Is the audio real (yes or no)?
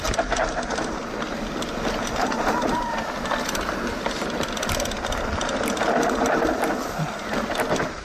yes